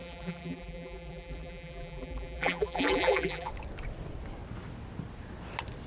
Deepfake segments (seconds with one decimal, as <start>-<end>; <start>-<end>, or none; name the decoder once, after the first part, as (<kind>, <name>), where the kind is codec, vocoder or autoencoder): 0.0-3.5 (vocoder, BigVGAN v2)